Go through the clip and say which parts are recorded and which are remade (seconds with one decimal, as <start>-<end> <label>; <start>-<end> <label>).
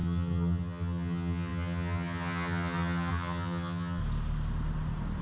0.0-4.0 remade; 4.0-5.2 recorded